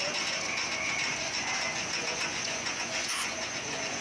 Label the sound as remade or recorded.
remade